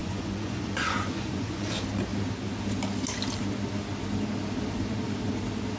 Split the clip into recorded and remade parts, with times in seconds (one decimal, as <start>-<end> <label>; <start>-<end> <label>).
0.0-1.7 remade; 1.7-5.8 recorded